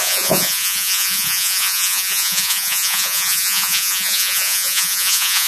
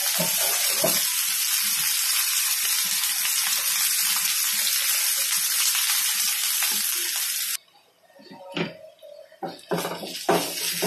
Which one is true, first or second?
second